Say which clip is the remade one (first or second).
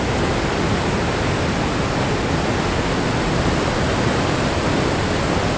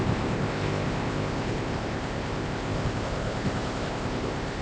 second